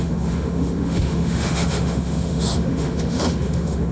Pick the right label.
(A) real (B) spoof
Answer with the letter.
B